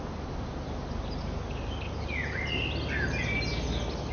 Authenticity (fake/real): real